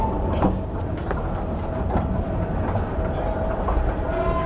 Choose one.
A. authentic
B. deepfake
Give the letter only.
A